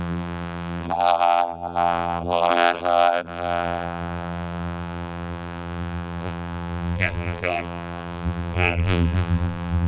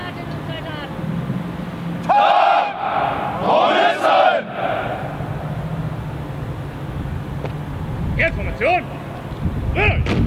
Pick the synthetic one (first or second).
first